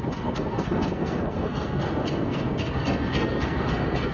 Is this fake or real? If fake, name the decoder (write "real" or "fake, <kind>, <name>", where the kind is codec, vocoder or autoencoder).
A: fake, codec, SNAC